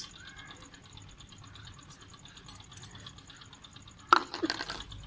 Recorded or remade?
recorded